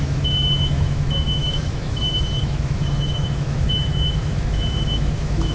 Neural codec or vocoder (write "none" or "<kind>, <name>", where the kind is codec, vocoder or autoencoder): autoencoder, DAC-VAE